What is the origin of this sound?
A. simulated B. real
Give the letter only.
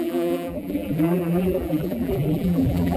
A